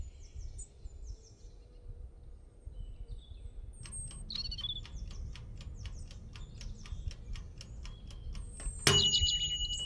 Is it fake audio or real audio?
real